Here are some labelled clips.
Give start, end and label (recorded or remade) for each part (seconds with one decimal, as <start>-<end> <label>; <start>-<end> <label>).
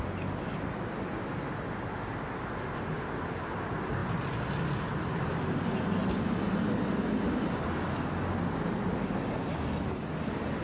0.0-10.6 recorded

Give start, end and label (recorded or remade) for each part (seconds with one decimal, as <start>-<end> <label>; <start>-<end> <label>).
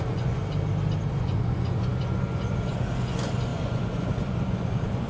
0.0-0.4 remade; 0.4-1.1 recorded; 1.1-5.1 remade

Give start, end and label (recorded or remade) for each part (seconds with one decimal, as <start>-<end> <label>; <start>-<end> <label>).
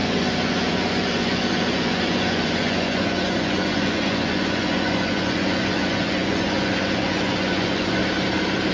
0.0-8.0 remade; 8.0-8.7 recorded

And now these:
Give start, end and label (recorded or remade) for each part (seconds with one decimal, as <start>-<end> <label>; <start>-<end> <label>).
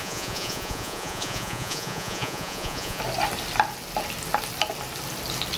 0.0-3.0 remade; 3.0-5.6 recorded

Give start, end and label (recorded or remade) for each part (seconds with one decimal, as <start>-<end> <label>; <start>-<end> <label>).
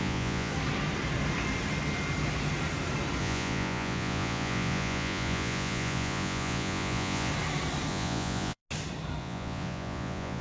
0.0-0.5 remade; 0.5-3.2 recorded; 3.2-7.3 remade; 7.3-7.9 recorded; 7.9-8.6 remade; 8.6-9.2 recorded; 9.2-10.4 remade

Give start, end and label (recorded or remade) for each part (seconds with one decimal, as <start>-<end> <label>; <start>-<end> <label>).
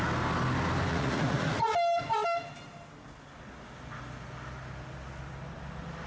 0.0-0.9 recorded; 0.9-1.7 remade; 1.7-6.1 recorded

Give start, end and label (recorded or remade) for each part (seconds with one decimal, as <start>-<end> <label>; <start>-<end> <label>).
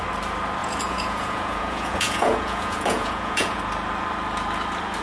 0.0-0.6 recorded; 0.6-3.6 remade; 3.6-5.0 recorded